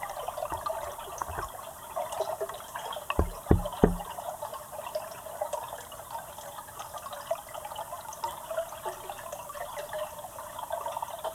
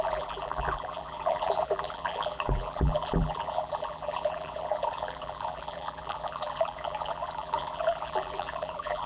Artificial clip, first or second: second